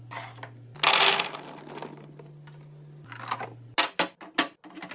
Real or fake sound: real